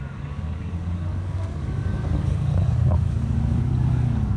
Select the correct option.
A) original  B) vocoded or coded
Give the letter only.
B